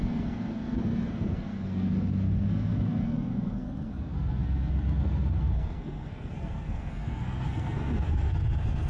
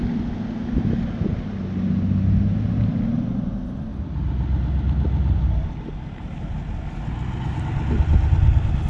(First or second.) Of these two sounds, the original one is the second